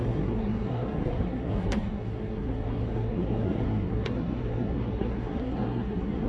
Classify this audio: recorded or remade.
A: remade